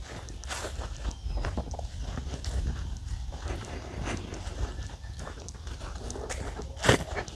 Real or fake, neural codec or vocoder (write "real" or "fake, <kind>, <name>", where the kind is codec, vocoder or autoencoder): real